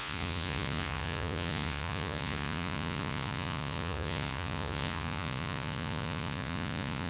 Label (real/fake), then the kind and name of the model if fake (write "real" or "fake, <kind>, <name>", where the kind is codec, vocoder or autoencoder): fake, vocoder, Vocos